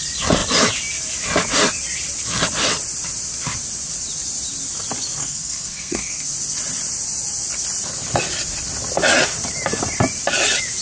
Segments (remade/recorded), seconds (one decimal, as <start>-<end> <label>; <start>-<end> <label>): 0.0-5.2 recorded; 5.2-6.3 remade; 6.3-10.8 recorded